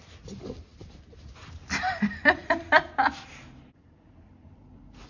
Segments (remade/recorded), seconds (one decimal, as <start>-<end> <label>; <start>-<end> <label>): 0.0-5.1 recorded